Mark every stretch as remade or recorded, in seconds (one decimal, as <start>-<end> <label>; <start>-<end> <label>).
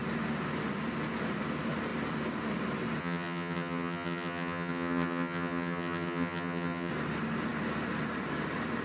0.0-3.0 recorded; 3.0-6.9 remade; 6.9-8.8 recorded